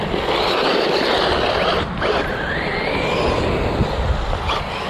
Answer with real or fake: real